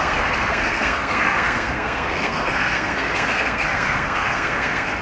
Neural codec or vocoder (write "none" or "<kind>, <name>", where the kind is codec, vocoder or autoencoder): codec, SNAC